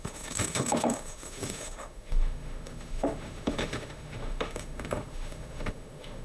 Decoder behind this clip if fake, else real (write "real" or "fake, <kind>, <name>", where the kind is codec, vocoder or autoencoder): fake, autoencoder, DAC-VAE